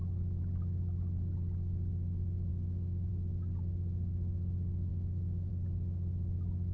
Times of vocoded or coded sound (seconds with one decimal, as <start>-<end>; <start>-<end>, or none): 2.5-3.1; 4.9-5.5

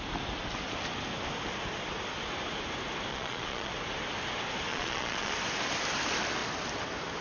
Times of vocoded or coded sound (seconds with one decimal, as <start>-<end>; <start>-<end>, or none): 3.1-3.7; 4.7-5.3

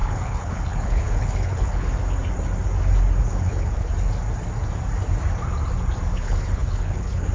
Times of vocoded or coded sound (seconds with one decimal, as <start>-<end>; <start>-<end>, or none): 0.0-1.9; 3.3-3.9; 6.1-7.3

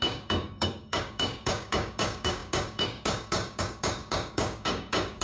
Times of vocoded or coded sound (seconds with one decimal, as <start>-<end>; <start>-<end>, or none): 0.0-5.2

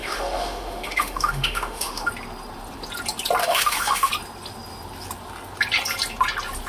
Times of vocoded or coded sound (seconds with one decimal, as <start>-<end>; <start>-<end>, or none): 0.0-2.1; 3.4-4.1

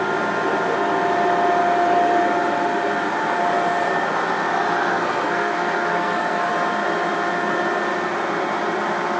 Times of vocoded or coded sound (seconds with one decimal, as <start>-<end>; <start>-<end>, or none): 4.9-6.5

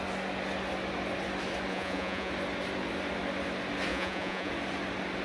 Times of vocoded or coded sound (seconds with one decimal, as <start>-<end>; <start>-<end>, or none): 1.7-2.3; 3.9-4.5